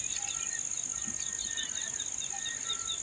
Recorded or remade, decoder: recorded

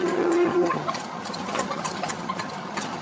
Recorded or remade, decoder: remade, vocoder, HiFi-GAN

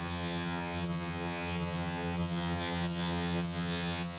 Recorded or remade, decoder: remade, vocoder, HiFi-GAN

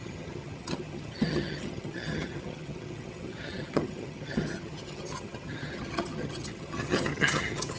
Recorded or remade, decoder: remade, vocoder, HiFi-GAN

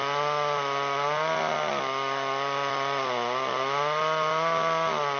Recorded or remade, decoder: recorded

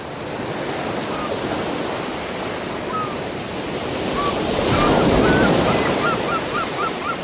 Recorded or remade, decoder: recorded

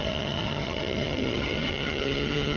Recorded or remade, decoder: remade, vocoder, HiFi-GAN